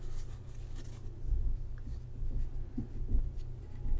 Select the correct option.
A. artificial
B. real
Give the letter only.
B